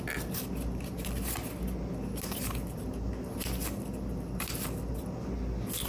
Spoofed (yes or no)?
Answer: no